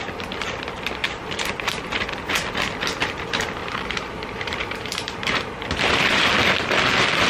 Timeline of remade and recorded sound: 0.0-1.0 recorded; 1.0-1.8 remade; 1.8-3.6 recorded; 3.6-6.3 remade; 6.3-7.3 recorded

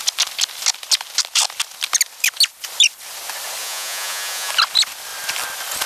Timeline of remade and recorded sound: 0.0-3.6 recorded; 3.6-4.5 remade; 4.5-5.9 recorded

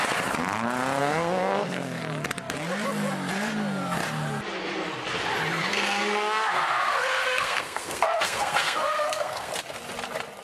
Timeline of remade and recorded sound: 0.0-1.0 recorded; 1.0-2.0 remade; 2.0-5.7 recorded; 5.7-9.5 remade; 9.5-10.4 recorded

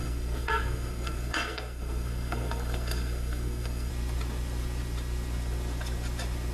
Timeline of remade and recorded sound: 0.0-3.9 remade; 3.9-6.5 recorded

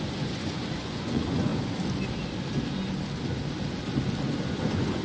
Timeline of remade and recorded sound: 0.0-1.5 remade; 1.5-4.5 recorded; 4.5-5.0 remade

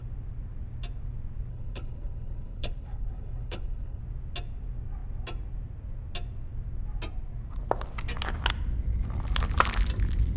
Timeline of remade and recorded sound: 0.0-1.5 recorded; 1.5-4.0 remade; 4.0-10.4 recorded